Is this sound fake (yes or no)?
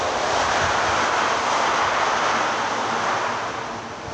no